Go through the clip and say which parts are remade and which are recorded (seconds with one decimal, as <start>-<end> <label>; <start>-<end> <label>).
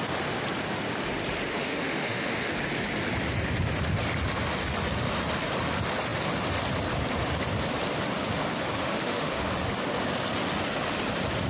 0.0-1.5 recorded; 1.5-2.5 remade; 2.5-8.8 recorded; 8.8-9.5 remade; 9.5-11.5 recorded